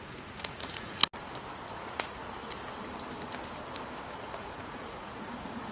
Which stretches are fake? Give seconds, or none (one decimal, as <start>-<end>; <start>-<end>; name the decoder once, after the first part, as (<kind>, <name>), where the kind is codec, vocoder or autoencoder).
0.0-1.0 (vocoder, Vocos); 1.7-2.2; 4.0-5.7

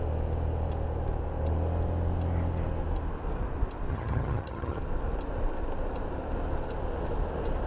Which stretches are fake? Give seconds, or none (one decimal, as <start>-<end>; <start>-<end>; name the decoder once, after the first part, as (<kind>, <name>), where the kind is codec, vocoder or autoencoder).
3.9-4.8 (vocoder, HiFi-GAN)

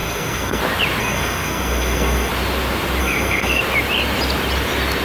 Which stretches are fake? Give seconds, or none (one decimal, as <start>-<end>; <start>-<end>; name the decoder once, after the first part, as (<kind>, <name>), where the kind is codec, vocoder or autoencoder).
0.0-0.6 (codec, SNAC); 1.0-2.3; 3.0-3.6

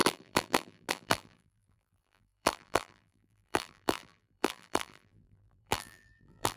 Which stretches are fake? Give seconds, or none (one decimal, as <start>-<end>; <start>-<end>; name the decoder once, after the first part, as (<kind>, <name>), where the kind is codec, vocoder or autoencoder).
0.0-6.6 (vocoder, BigVGAN v2)

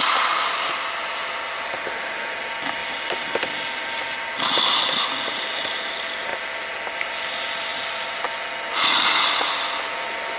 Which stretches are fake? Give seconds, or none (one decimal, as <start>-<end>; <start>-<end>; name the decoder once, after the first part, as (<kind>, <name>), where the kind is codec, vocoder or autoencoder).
none